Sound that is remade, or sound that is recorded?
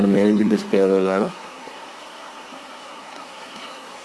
remade